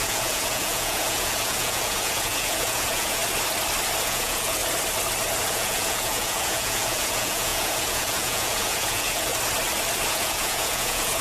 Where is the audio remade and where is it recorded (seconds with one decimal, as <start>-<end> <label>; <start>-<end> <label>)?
0.0-3.2 remade; 3.2-4.0 recorded; 4.0-4.6 remade; 4.6-5.5 recorded; 5.5-9.3 remade; 9.3-10.1 recorded; 10.1-11.2 remade